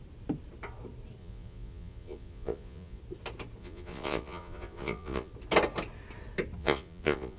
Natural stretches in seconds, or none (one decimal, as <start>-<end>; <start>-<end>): 0.0-1.2; 3.0-3.6; 5.3-6.6